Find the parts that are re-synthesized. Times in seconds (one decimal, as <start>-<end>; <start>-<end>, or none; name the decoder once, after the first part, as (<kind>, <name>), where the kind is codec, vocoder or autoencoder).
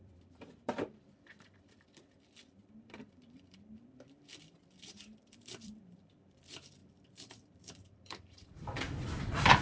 0.0-9.6 (vocoder, BigVGAN v2)